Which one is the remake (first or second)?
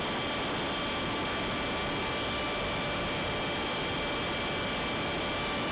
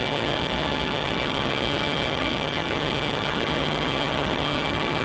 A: second